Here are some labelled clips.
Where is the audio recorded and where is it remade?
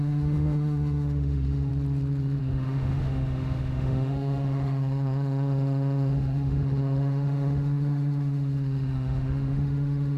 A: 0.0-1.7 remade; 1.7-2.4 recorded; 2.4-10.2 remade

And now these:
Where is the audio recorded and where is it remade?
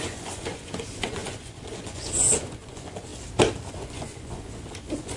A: 0.0-3.1 remade; 3.1-3.7 recorded; 3.7-5.2 remade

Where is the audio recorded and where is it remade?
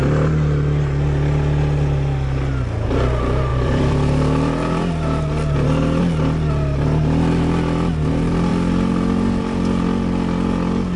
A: 0.0-3.5 recorded; 3.5-6.0 remade; 6.0-8.5 recorded; 8.5-9.4 remade; 9.4-11.0 recorded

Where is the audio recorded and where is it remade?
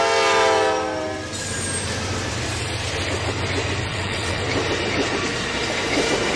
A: 0.0-3.9 recorded; 3.9-4.4 remade; 4.4-6.4 recorded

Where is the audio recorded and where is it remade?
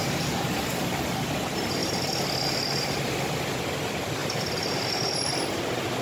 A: 0.0-1.0 remade; 1.0-4.2 recorded; 4.2-5.3 remade; 5.3-6.0 recorded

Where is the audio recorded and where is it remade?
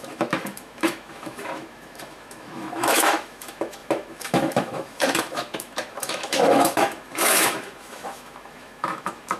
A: 0.0-9.4 remade